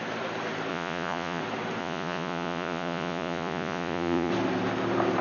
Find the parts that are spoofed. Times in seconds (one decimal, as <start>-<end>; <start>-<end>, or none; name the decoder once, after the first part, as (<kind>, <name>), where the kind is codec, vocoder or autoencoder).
0.7-1.4 (vocoder, Vocos); 1.8-4.3